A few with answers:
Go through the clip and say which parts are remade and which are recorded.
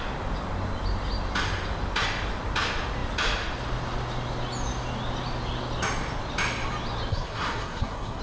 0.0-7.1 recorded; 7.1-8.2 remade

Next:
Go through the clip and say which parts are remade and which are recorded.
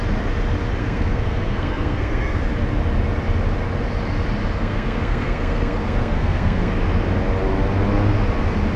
0.0-0.8 recorded; 0.8-2.4 remade; 2.4-4.6 recorded; 4.6-6.7 remade; 6.7-8.8 recorded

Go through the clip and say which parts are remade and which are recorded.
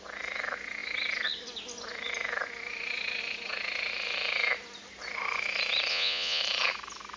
0.0-5.9 recorded; 5.9-6.4 remade; 6.4-7.2 recorded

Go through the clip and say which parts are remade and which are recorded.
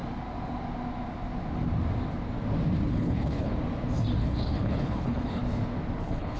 0.0-2.9 recorded; 2.9-3.5 remade; 3.5-4.2 recorded; 4.2-5.4 remade; 5.4-6.0 recorded; 6.0-6.4 remade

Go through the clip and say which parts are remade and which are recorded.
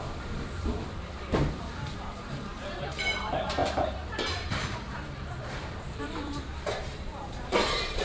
0.0-8.0 remade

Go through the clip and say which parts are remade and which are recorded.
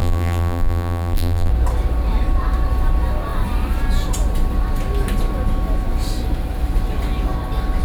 0.0-1.5 remade; 1.5-7.8 recorded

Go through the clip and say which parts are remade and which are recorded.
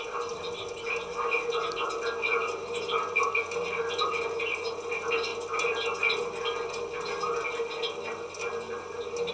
0.0-9.3 recorded